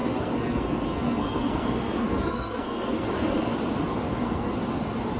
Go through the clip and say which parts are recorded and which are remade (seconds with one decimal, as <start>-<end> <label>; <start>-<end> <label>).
0.0-3.1 remade; 3.1-3.9 recorded; 3.9-4.5 remade; 4.5-5.2 recorded

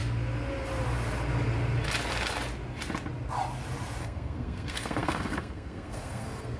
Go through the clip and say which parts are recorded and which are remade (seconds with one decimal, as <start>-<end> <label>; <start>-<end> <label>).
0.0-4.0 recorded; 4.0-6.6 remade

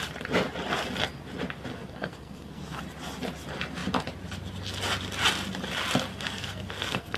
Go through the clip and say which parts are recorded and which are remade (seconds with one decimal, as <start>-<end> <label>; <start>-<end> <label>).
0.0-1.7 recorded; 1.7-2.8 remade; 2.8-6.1 recorded; 6.1-7.2 remade